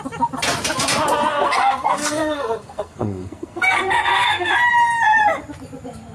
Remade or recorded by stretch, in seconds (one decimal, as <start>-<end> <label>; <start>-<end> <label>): 0.0-1.3 recorded; 1.3-4.5 remade; 4.5-6.1 recorded